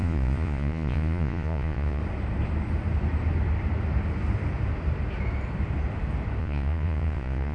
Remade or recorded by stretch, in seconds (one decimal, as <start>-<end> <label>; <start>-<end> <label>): 0.0-2.0 remade; 2.0-6.4 recorded; 6.4-7.5 remade